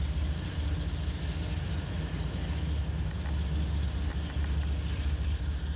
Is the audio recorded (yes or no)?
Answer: yes